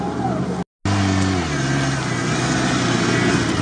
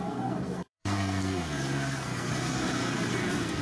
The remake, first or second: second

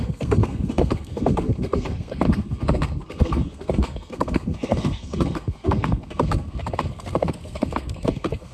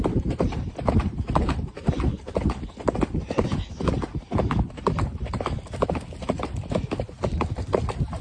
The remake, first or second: first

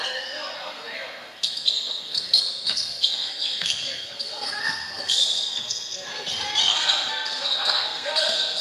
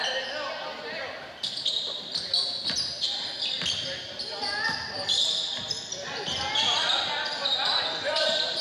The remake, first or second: first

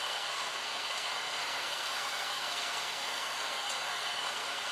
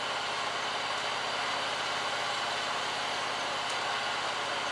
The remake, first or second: first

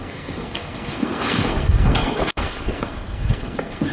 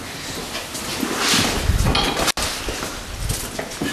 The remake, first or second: first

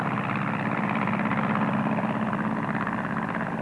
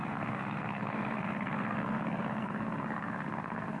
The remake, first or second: second